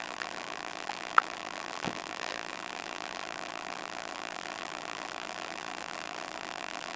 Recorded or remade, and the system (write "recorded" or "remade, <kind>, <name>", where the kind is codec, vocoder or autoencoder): remade, vocoder, BigVGAN v2